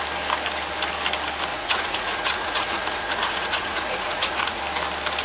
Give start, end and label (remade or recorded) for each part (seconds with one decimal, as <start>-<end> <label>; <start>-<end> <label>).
0.0-1.5 recorded; 1.5-4.6 remade; 4.6-5.2 recorded

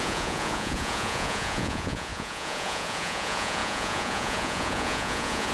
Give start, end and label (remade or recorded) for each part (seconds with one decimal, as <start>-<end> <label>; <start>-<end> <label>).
0.0-5.5 remade

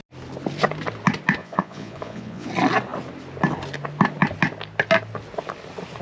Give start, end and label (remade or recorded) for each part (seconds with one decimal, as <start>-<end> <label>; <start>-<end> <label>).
0.0-1.4 recorded; 1.4-2.5 remade; 2.5-6.0 recorded

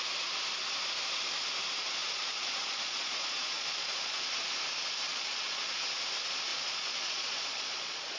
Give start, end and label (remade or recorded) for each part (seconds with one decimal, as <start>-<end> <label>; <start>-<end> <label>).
0.0-2.0 recorded; 2.0-4.2 remade; 4.2-5.1 recorded; 5.1-5.8 remade; 5.8-6.5 recorded; 6.5-8.2 remade

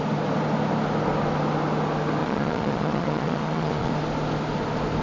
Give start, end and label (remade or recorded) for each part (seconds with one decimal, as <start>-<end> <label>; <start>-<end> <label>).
0.0-2.2 recorded; 2.2-3.9 remade; 3.9-5.0 recorded